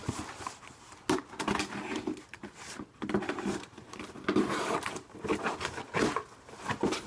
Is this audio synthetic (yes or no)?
no